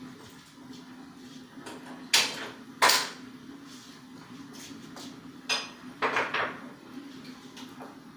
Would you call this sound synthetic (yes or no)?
no